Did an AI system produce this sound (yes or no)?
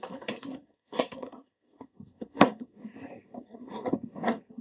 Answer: yes